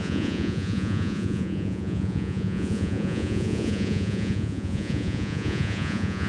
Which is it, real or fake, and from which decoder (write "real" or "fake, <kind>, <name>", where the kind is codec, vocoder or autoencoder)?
fake, vocoder, Vocos